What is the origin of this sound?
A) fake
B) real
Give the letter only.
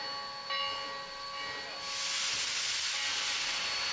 B